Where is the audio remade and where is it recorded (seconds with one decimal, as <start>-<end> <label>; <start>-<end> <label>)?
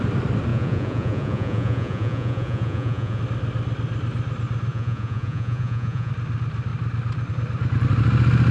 0.0-0.5 recorded; 0.5-3.2 remade; 3.2-4.7 recorded; 4.7-6.1 remade; 6.1-8.5 recorded